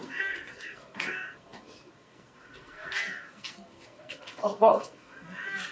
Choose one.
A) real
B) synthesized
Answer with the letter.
B